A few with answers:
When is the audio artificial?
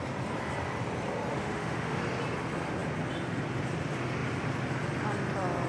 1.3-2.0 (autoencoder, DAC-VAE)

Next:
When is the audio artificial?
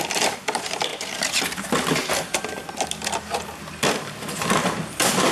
0.0-0.9 (vocoder, BigVGAN v2); 1.7-2.6; 3.7-5.3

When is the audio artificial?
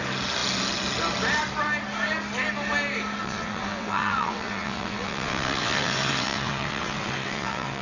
3.2-7.8 (vocoder, WaveNeXt)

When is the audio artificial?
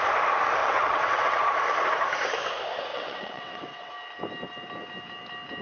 0.6-1.4 (vocoder, WaveNeXt); 2.9-3.9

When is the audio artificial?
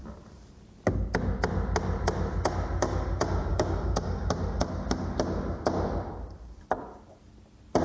3.5-4.3 (codec, DAC)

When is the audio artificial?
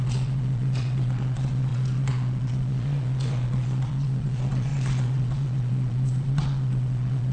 0.0-7.3 (vocoder, Vocos)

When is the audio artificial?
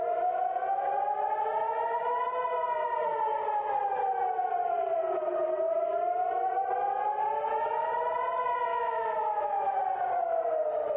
8.7-9.8 (autoencoder, DAC-VAE)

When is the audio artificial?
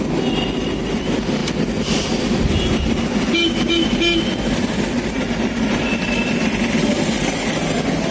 none